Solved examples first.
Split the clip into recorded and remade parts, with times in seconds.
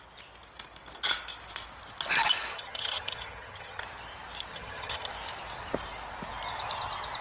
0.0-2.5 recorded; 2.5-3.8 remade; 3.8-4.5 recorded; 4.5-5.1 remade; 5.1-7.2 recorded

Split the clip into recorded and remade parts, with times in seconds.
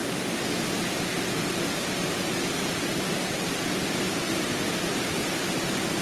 0.0-3.8 recorded; 3.8-6.0 remade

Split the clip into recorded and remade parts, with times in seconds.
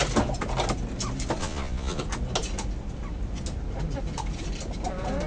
0.0-1.4 recorded; 1.4-2.0 remade; 2.0-5.3 recorded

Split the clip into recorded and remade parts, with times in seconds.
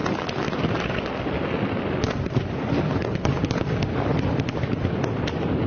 0.0-5.7 recorded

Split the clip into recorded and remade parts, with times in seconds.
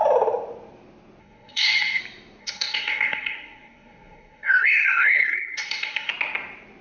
0.0-1.2 recorded; 1.2-2.0 remade; 2.0-2.4 recorded; 2.4-6.1 remade; 6.1-6.8 recorded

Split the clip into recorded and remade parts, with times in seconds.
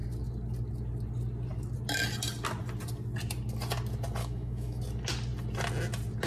0.0-4.2 recorded; 4.2-4.8 remade; 4.8-6.3 recorded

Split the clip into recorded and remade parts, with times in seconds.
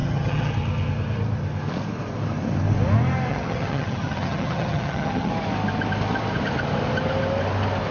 0.0-0.5 remade; 0.5-3.3 recorded; 3.3-5.3 remade; 5.3-7.9 recorded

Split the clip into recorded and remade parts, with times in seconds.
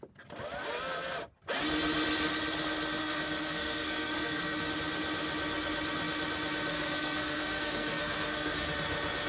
0.0-3.0 recorded; 3.0-4.7 remade; 4.7-6.7 recorded; 6.7-8.7 remade; 8.7-9.3 recorded